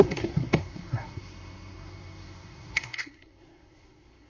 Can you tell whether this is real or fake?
fake